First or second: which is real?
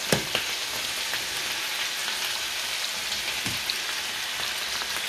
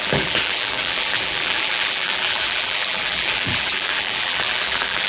first